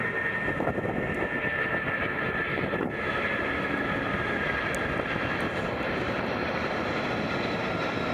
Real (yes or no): no